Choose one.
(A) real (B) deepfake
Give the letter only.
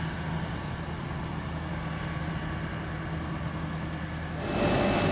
A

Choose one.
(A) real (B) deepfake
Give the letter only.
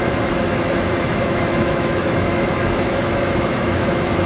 B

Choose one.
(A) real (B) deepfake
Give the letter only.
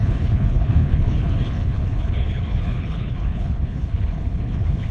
B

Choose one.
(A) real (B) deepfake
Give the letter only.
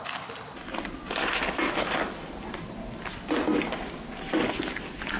A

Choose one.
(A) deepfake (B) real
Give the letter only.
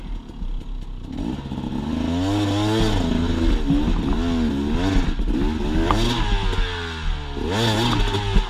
B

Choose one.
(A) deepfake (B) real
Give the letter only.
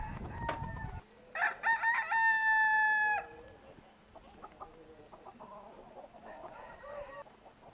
B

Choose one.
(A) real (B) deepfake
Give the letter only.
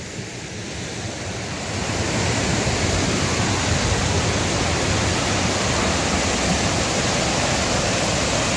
A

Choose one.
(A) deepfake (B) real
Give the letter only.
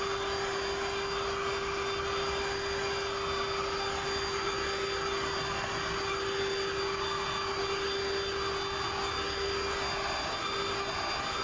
B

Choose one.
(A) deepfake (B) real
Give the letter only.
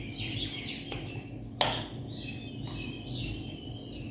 B